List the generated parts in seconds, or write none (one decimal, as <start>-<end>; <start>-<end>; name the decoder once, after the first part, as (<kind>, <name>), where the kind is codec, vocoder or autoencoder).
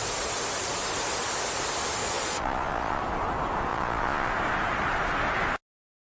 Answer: 2.0-3.0 (vocoder, Vocos); 3.7-4.3